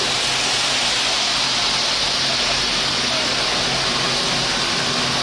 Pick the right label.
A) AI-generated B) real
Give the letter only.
B